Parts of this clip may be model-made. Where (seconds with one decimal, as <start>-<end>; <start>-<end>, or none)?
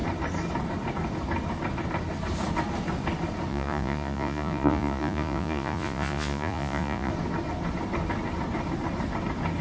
3.5-7.1